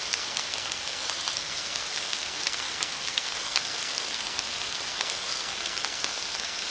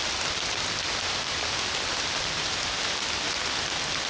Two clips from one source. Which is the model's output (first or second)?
first